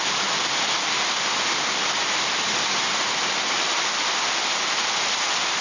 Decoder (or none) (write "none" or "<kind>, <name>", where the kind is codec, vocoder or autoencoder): none